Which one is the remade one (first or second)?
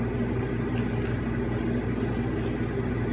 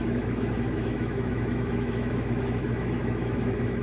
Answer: second